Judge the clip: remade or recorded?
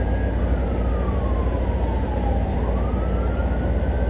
recorded